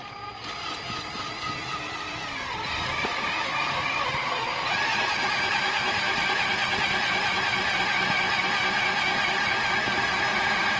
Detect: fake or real real